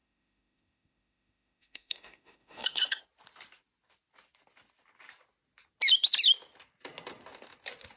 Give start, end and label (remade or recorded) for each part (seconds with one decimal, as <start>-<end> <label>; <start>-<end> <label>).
0.0-3.0 remade; 3.0-8.0 recorded